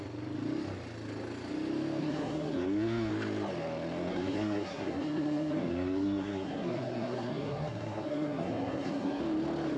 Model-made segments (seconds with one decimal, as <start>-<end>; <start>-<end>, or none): 2.0-3.1; 4.1-9.2